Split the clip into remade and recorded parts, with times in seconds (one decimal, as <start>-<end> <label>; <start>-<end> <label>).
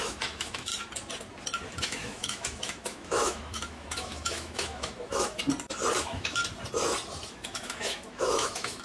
0.0-0.7 remade; 0.7-1.8 recorded; 1.8-5.4 remade; 5.4-6.0 recorded; 6.0-6.4 remade; 6.4-7.3 recorded; 7.3-8.8 remade